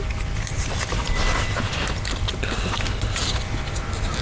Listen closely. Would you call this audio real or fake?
real